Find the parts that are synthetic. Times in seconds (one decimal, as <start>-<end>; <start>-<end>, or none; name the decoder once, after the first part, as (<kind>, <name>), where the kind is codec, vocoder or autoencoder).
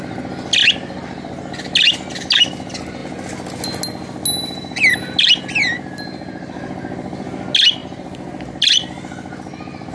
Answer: none